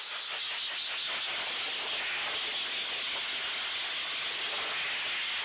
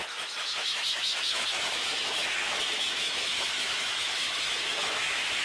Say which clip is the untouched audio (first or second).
first